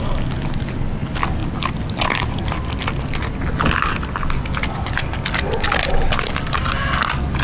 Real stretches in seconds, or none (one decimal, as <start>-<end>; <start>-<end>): 0.0-7.4